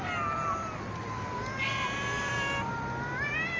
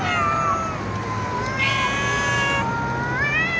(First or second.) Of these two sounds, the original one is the second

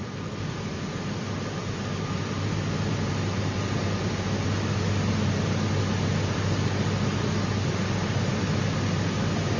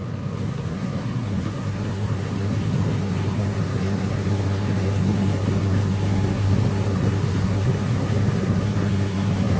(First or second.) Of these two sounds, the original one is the first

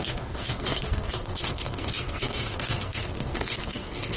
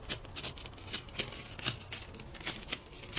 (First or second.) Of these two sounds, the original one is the second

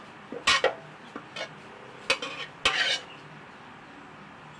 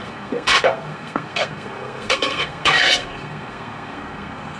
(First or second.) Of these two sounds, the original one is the first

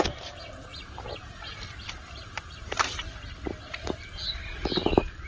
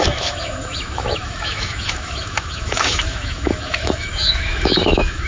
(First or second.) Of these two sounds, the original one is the first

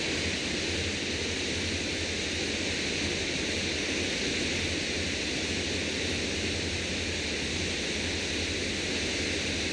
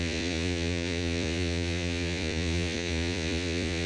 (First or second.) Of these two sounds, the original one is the first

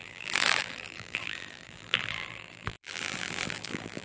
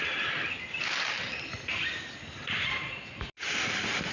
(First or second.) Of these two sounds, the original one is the second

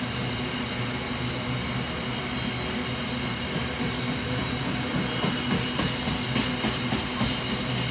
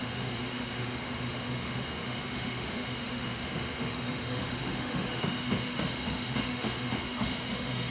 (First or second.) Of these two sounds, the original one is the first